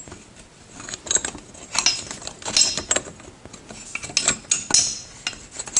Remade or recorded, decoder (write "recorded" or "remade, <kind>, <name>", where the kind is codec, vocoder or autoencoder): recorded